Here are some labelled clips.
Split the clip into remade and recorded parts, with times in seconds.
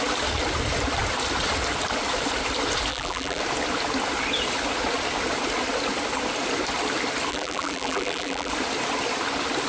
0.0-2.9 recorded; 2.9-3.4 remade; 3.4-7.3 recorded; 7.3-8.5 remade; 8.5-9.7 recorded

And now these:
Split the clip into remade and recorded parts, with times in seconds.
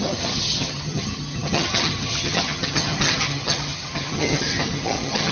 0.0-5.3 remade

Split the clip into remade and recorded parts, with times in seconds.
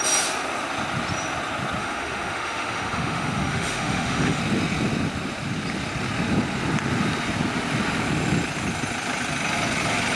0.0-1.8 recorded; 1.8-4.4 remade; 4.4-10.2 recorded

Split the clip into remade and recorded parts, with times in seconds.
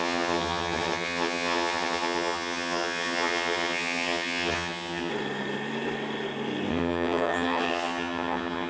0.0-5.1 remade; 5.1-6.7 recorded; 6.7-8.7 remade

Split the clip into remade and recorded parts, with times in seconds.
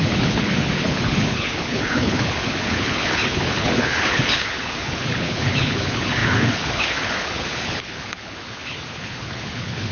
0.0-9.9 remade